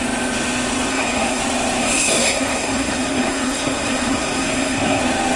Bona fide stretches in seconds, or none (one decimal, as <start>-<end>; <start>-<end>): 0.0-0.9; 1.4-1.8; 5.0-5.4